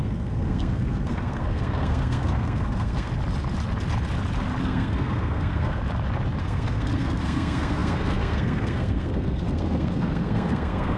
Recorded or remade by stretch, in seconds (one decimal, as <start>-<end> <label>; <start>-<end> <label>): 0.0-3.1 remade; 3.1-4.6 recorded; 4.6-5.8 remade; 5.8-6.4 recorded; 6.4-11.0 remade